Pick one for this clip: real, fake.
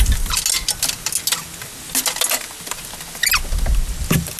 real